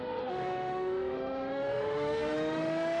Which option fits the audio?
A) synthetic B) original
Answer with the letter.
A